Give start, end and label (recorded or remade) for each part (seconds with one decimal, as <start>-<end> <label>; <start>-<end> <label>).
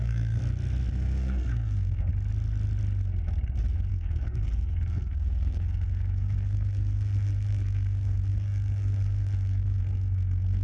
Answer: 0.0-0.4 remade; 0.4-0.9 recorded; 0.9-2.1 remade; 2.1-3.9 recorded; 3.9-10.6 remade